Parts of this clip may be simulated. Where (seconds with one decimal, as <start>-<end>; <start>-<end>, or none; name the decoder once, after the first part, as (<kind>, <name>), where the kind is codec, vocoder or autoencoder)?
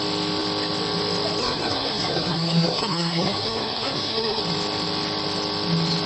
1.4-4.4 (codec, SNAC)